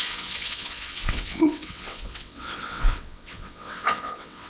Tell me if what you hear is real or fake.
fake